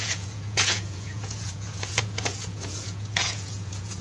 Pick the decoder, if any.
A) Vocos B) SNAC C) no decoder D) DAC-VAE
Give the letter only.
A